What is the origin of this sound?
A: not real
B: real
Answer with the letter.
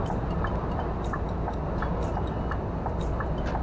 B